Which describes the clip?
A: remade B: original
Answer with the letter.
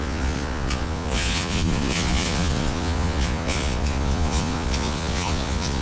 A